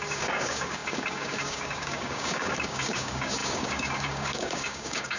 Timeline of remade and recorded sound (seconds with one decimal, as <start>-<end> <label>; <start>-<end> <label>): 0.0-5.2 remade